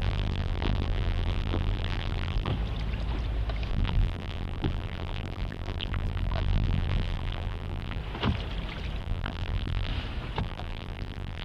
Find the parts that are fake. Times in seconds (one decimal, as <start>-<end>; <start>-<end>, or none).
0.0-2.5; 3.7-8.0; 9.0-9.9; 10.4-11.4

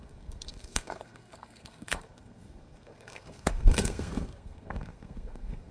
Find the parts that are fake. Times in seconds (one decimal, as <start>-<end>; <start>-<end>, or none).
0.0-5.7

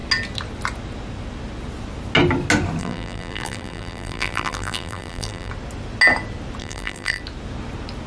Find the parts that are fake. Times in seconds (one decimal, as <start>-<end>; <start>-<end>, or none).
2.8-5.5; 6.6-7.2

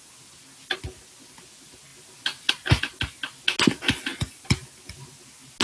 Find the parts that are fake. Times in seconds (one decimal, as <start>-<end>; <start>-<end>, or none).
none